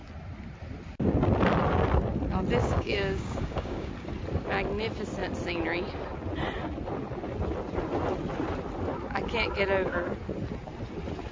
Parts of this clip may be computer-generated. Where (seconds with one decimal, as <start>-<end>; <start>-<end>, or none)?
2.6-3.9